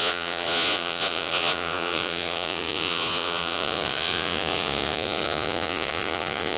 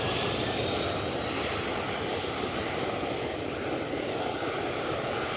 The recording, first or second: second